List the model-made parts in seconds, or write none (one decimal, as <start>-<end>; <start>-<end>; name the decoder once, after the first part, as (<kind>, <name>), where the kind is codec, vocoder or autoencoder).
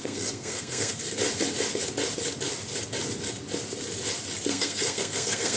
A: 0.0-1.2 (codec, SNAC); 4.5-5.6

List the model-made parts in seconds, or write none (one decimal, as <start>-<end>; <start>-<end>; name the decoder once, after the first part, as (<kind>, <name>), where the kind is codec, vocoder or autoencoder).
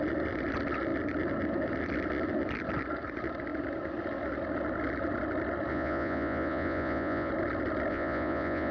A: 5.7-7.3 (vocoder, Vocos); 7.9-8.7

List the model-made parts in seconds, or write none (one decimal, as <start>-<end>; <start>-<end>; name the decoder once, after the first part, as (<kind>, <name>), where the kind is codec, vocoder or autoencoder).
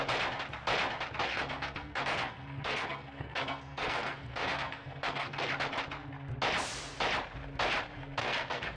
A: 1.3-5.5 (codec, SNAC); 8.2-8.8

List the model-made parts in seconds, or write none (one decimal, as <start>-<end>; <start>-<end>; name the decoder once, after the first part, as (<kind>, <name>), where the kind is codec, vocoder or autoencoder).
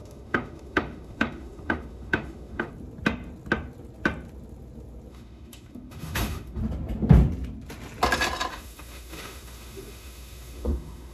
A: 0.0-2.7 (autoencoder, DAC-VAE); 5.1-6.6; 8.5-11.1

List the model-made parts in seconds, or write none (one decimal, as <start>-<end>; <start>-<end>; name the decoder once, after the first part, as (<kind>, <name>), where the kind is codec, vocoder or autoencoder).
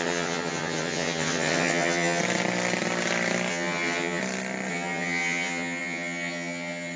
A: 0.0-2.2 (vocoder, HiFi-GAN); 3.5-4.2; 4.7-7.0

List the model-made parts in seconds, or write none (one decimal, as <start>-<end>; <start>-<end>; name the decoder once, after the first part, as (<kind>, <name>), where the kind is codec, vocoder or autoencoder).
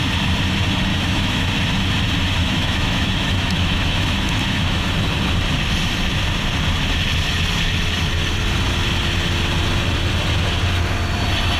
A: 0.9-1.5 (autoencoder, DAC-VAE); 2.4-4.9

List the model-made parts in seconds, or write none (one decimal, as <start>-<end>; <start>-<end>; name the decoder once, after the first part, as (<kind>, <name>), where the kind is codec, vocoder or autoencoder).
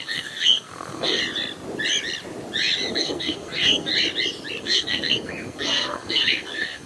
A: 0.0-1.2 (codec, SNAC); 2.9-3.9; 4.6-6.9